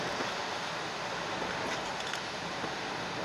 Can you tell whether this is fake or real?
real